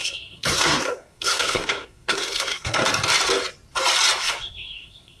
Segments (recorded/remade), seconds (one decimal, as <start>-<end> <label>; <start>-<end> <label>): 0.0-2.8 remade; 2.8-4.2 recorded; 4.2-5.2 remade